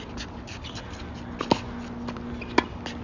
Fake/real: real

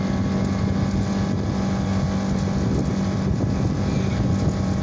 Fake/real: real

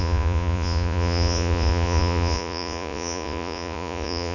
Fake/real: fake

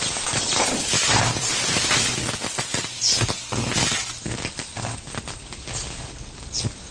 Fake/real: fake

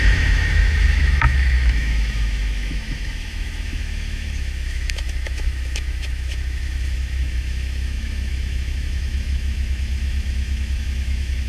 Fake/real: fake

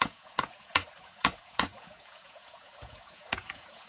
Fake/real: fake